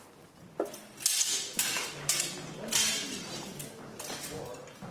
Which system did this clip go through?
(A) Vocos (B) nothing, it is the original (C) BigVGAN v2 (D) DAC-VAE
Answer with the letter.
B